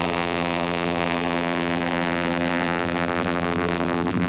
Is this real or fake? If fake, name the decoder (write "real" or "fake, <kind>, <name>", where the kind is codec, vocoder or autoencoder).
fake, vocoder, BigVGAN v2